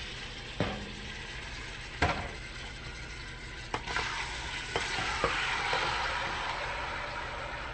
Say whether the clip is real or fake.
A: real